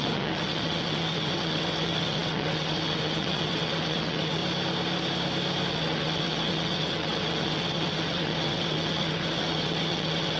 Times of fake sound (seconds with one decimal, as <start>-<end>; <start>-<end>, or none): 0.0-4.4; 5.7-10.4